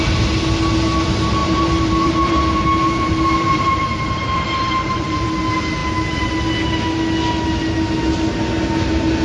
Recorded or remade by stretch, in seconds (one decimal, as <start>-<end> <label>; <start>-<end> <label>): 0.0-1.4 recorded; 1.4-5.3 remade; 5.3-9.2 recorded